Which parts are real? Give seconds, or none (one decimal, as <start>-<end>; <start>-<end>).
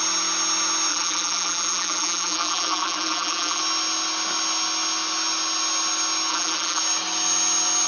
0.0-0.9; 3.6-6.3; 6.8-7.9